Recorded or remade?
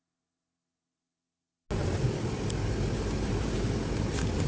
recorded